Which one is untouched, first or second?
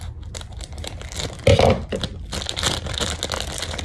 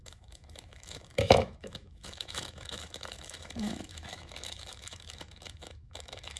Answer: first